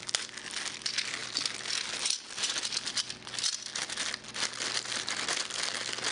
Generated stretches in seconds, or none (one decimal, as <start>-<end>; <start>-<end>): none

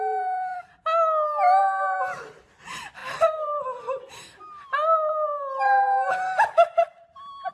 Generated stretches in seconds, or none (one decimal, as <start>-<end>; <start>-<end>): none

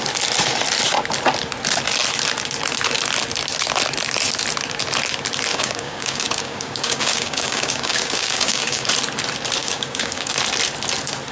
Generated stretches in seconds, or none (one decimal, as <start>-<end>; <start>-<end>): 5.5-8.9; 9.6-10.3

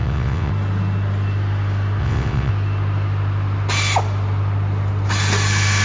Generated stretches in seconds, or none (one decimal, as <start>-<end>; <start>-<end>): 0.0-0.5; 2.0-2.5